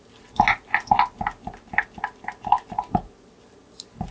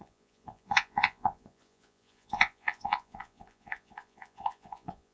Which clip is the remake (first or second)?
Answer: second